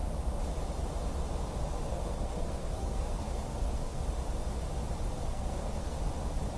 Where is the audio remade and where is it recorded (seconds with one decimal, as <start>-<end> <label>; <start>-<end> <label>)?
0.0-1.9 recorded; 1.9-4.0 remade; 4.0-5.3 recorded; 5.3-6.0 remade; 6.0-6.6 recorded